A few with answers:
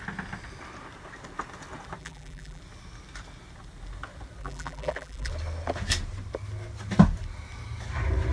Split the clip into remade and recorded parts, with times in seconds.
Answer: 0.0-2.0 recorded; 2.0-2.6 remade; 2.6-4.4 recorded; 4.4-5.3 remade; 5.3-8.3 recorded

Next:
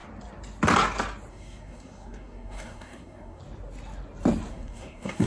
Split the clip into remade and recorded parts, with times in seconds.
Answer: 0.0-1.3 recorded; 1.3-3.4 remade; 3.4-4.5 recorded; 4.5-5.3 remade

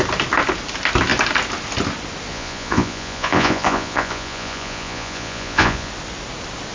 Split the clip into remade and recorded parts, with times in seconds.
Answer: 0.0-2.3 recorded; 2.3-5.9 remade; 5.9-6.7 recorded